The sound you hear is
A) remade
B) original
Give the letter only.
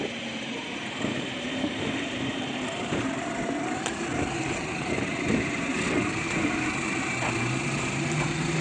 A